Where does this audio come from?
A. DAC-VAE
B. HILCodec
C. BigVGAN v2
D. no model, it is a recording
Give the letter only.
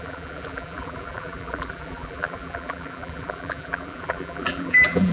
C